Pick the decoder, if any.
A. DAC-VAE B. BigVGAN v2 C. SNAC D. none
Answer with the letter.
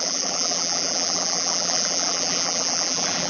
B